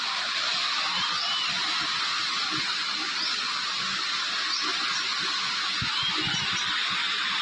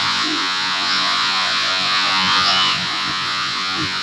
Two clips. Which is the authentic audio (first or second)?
first